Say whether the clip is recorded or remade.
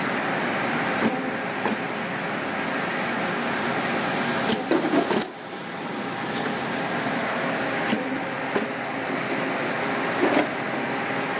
recorded